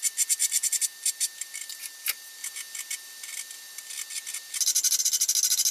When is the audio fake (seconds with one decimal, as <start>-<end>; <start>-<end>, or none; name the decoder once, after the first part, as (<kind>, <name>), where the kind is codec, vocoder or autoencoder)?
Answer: none